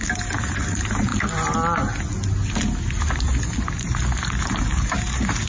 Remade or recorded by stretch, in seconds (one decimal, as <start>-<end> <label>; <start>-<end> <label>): 0.0-1.1 remade; 1.1-4.4 recorded; 4.4-5.5 remade

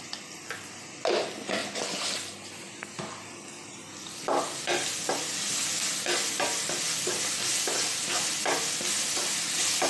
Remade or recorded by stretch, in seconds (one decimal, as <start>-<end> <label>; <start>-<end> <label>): 0.0-9.9 recorded

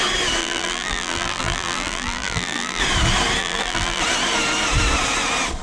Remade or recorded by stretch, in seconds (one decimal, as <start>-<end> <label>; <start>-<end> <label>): 0.0-0.4 recorded; 0.4-2.8 remade; 2.8-3.4 recorded; 3.4-4.0 remade; 4.0-5.6 recorded

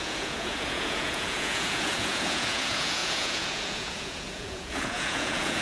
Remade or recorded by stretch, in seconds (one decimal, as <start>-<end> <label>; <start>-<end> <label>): 0.0-5.6 remade

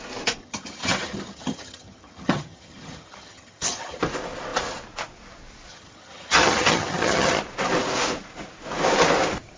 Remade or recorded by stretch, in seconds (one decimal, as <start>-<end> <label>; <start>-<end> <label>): 0.0-0.4 recorded; 0.4-4.0 remade; 4.0-5.7 recorded; 5.7-7.4 remade; 7.4-9.6 recorded

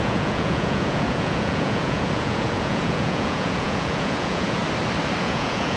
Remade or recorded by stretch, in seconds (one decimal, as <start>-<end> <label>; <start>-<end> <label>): 0.0-4.6 remade; 4.6-5.2 recorded; 5.2-5.8 remade

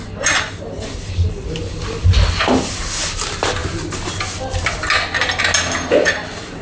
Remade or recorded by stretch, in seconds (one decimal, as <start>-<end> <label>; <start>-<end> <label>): 0.0-6.6 recorded

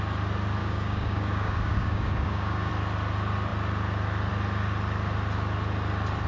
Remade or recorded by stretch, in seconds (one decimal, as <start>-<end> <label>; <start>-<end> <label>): 0.0-0.6 recorded; 0.6-2.7 remade; 2.7-6.3 recorded